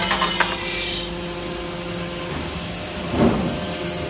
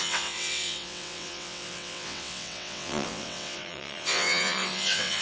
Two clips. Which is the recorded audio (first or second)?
first